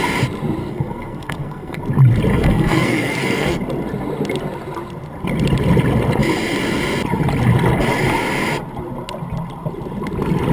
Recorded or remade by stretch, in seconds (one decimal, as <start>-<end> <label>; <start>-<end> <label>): 0.0-0.6 recorded; 0.6-1.8 remade; 1.8-2.3 recorded; 2.3-3.6 remade; 3.6-10.5 recorded